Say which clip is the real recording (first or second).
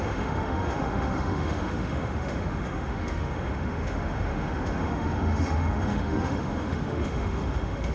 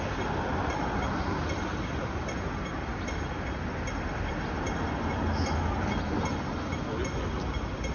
second